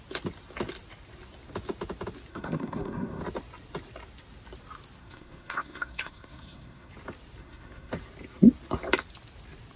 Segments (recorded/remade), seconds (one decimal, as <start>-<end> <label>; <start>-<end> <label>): 0.0-2.3 recorded; 2.3-3.2 remade; 3.2-5.0 recorded; 5.0-6.9 remade; 6.9-7.4 recorded; 7.4-7.9 remade; 7.9-9.8 recorded